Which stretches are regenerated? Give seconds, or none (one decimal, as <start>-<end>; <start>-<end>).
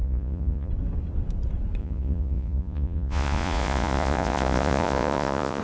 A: 0.0-0.7; 1.8-5.6